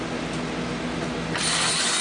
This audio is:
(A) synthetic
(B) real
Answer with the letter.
B